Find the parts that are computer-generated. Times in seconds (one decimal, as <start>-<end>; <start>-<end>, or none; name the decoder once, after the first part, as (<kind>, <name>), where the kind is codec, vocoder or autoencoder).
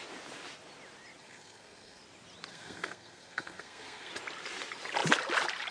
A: 1.2-2.0 (codec, SNAC); 2.5-4.1